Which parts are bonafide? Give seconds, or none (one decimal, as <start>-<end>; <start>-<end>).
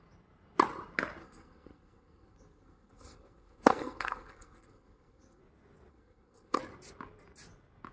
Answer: 0.0-1.2; 5.4-5.9; 6.6-7.9